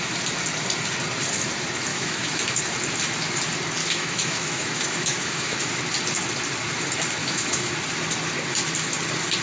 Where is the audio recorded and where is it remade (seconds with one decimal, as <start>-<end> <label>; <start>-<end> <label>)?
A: 0.0-1.9 recorded; 1.9-2.6 remade; 2.6-3.8 recorded; 3.8-5.7 remade; 5.7-7.2 recorded; 7.2-7.7 remade; 7.7-9.4 recorded